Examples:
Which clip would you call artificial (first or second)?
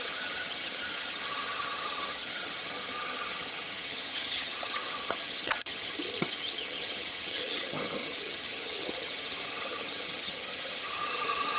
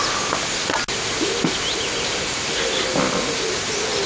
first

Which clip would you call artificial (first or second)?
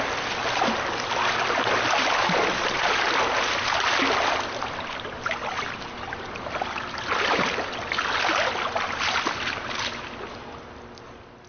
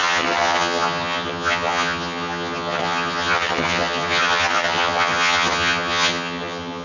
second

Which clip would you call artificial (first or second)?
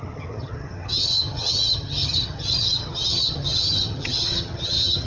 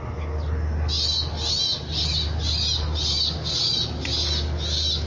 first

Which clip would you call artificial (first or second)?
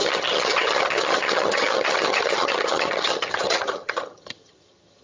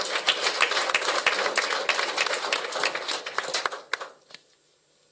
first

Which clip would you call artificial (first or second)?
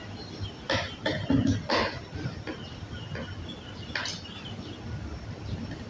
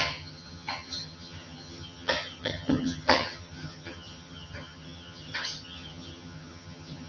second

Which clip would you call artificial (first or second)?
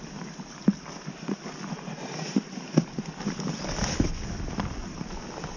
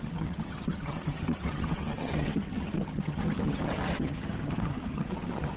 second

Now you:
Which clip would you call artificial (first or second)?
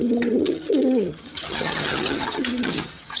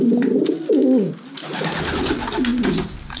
first